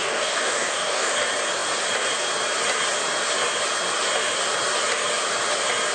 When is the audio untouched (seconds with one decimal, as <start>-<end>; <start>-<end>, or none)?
1.1-5.9